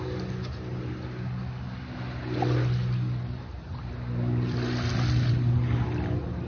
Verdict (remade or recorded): recorded